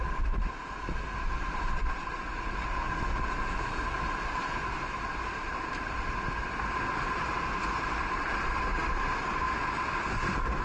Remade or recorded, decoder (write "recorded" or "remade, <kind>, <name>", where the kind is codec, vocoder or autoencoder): recorded